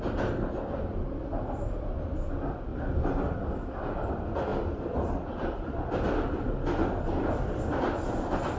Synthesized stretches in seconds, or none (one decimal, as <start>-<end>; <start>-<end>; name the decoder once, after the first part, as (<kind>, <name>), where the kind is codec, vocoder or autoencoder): 2.7-4.1 (vocoder, BigVGAN v2); 4.5-7.6